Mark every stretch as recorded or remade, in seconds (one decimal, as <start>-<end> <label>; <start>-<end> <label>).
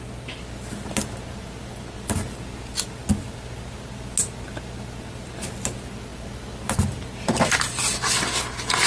0.0-6.1 recorded; 6.1-8.3 remade; 8.3-8.9 recorded